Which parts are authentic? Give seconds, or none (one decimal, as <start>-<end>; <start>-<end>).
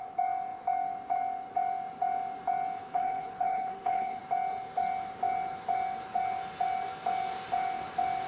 0.0-2.8; 4.2-8.3